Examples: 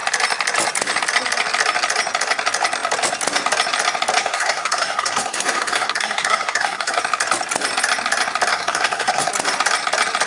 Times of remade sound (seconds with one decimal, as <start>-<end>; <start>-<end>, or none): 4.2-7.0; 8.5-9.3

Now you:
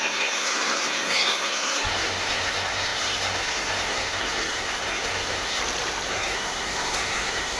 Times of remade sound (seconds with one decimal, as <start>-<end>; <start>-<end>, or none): 0.0-5.6; 6.1-7.6

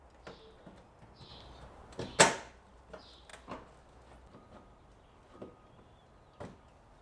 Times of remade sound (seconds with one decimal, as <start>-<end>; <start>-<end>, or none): none